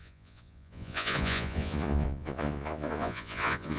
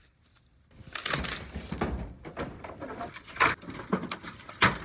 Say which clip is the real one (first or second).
second